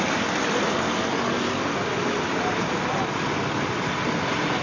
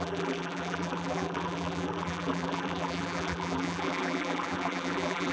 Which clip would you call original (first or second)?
first